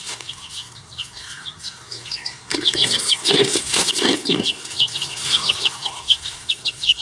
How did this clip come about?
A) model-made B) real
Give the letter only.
A